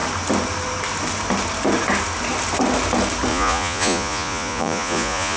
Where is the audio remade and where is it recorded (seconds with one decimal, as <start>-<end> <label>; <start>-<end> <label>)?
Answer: 0.0-3.3 recorded; 3.3-5.4 remade